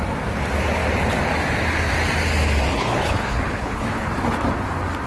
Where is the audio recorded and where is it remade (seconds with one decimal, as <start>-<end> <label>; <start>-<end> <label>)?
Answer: 0.0-2.7 recorded; 2.7-4.1 remade; 4.1-5.1 recorded